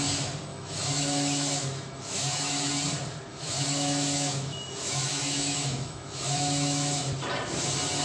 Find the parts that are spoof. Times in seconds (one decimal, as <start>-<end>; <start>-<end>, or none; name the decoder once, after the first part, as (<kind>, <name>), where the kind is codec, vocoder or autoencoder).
0.5-2.7 (autoencoder, DAC-VAE); 3.3-7.0